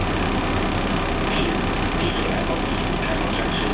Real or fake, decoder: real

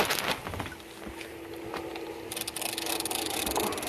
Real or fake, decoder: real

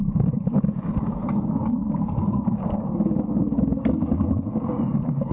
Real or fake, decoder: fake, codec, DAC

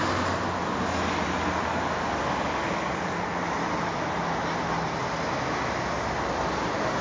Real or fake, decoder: real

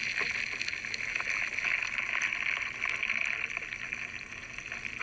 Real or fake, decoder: real